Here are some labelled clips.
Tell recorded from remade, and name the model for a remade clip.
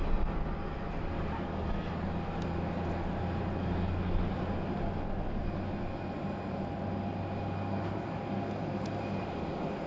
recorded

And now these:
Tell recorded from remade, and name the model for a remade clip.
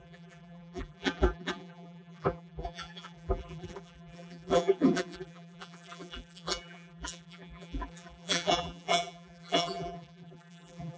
remade, vocoder, BigVGAN v2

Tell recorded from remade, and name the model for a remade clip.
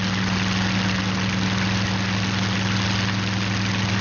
recorded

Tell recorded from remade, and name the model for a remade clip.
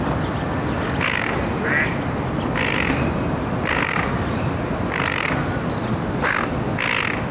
recorded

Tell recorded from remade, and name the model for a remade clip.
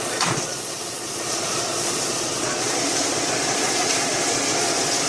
remade, vocoder, Vocos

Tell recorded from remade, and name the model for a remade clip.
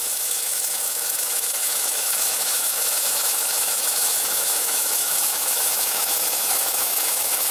remade, autoencoder, DAC-VAE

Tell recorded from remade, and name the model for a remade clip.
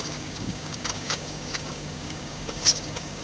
remade, codec, DAC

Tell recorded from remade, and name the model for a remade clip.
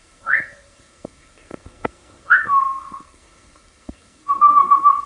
remade, codec, SNAC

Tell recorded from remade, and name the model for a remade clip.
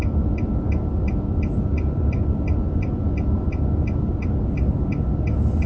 recorded